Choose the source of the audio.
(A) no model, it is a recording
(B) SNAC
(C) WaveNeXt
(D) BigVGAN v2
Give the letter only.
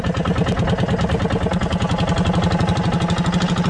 A